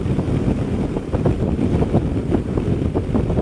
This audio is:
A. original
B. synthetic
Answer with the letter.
A